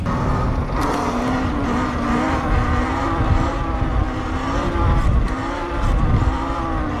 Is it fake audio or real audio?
real